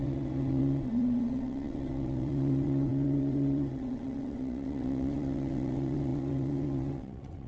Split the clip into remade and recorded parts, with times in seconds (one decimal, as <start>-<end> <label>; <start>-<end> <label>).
0.0-7.5 remade